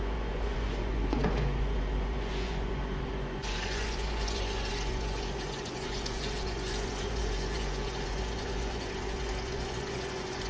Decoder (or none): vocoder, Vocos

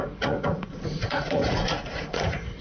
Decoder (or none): vocoder, Vocos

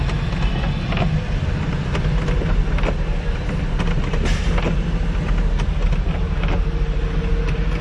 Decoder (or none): none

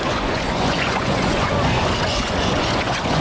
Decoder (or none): vocoder, Vocos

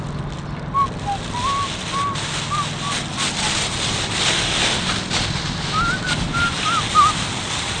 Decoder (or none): none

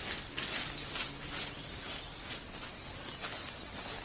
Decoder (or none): none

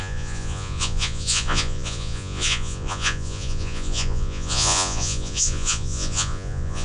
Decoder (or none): vocoder, Vocos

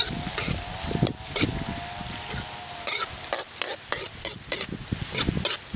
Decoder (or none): none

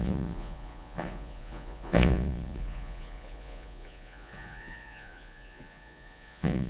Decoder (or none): vocoder, Vocos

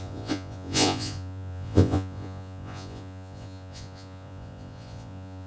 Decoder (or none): vocoder, Vocos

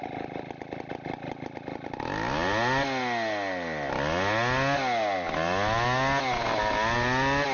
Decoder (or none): none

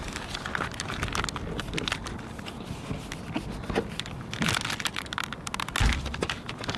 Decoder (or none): none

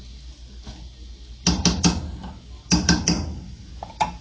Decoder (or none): none